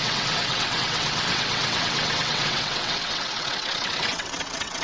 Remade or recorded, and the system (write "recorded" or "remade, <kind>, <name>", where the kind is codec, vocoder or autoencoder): remade, vocoder, WaveNeXt